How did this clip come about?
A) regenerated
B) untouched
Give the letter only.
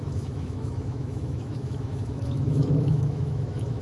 A